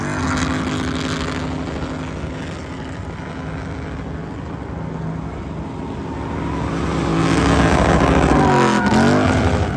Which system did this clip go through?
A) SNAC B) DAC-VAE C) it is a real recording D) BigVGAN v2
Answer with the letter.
C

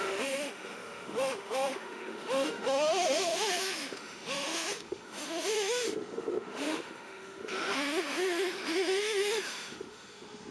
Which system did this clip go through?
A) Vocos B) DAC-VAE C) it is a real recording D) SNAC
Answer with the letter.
B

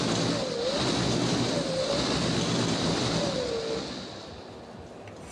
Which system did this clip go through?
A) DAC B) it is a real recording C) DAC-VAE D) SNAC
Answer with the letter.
B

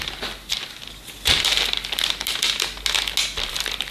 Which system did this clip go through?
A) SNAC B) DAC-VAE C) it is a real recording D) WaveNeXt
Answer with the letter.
C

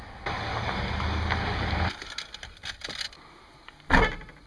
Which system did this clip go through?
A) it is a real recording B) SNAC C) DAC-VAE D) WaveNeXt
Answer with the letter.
A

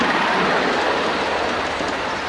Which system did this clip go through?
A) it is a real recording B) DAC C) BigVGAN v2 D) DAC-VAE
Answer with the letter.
A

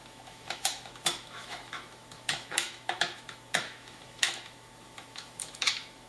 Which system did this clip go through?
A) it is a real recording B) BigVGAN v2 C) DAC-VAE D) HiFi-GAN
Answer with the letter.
C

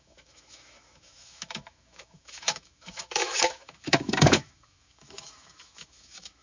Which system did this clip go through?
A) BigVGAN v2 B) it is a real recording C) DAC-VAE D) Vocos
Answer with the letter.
C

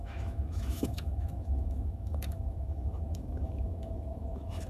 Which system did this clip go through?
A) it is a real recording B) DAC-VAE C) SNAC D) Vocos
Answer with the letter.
B